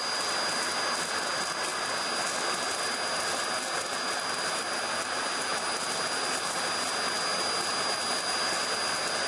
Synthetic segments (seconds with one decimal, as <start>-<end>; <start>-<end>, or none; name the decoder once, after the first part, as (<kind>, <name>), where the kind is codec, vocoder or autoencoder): none